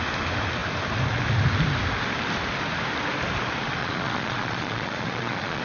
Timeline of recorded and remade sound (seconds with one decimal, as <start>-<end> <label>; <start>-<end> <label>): 0.0-3.8 recorded; 3.8-5.6 remade

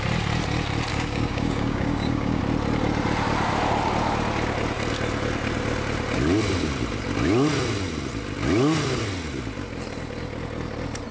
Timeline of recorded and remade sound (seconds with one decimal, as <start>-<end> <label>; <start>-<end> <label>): 0.0-0.9 recorded; 0.9-2.4 remade; 2.4-11.1 recorded

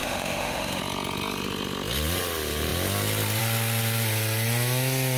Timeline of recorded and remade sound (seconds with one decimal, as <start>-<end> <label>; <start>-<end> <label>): 0.0-0.8 remade; 0.8-5.2 recorded

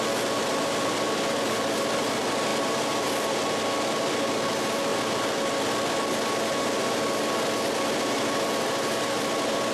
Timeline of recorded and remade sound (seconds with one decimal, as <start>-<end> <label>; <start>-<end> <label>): 0.0-2.5 recorded; 2.5-3.4 remade; 3.4-9.7 recorded

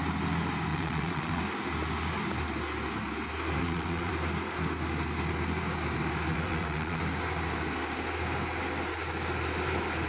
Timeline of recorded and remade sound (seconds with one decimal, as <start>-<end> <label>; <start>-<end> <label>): 0.0-0.7 recorded; 0.7-1.4 remade; 1.4-3.6 recorded; 3.6-4.1 remade; 4.1-6.3 recorded; 6.3-7.0 remade; 7.0-10.1 recorded

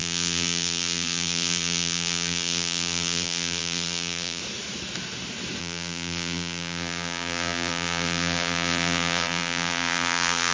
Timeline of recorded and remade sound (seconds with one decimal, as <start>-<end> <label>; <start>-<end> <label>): 0.0-4.4 remade; 4.4-5.6 recorded; 5.6-10.5 remade